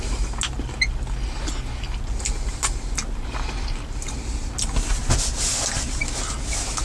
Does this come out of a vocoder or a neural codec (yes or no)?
no